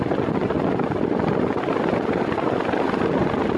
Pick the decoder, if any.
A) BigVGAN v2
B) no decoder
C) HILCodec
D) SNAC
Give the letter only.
B